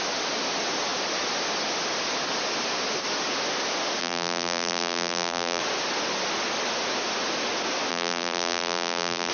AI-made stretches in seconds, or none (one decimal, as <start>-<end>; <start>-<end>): 4.0-5.6; 7.9-9.3